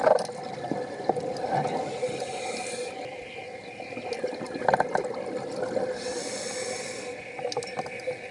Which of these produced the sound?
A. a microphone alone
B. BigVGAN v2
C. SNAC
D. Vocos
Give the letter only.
A